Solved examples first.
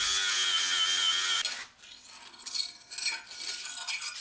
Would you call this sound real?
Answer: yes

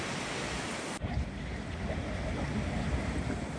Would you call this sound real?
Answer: yes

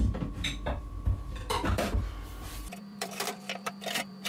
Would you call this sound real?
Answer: no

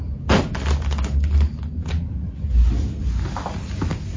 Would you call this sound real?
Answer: yes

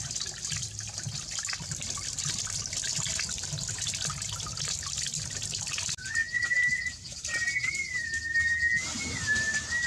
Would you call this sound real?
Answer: yes